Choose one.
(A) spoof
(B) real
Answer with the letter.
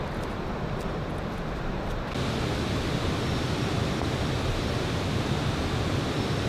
B